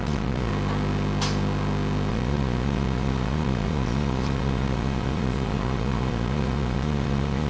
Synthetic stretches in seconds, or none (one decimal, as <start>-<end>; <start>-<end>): 0.0-0.5; 2.1-7.5